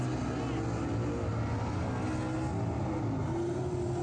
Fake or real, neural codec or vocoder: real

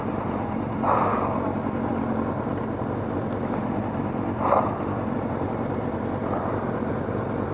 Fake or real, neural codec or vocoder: real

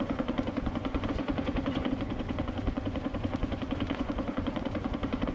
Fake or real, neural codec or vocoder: fake, vocoder, Vocos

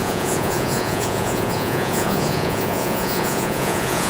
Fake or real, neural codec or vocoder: fake, vocoder, Vocos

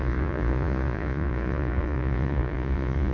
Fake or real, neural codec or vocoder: fake, vocoder, Vocos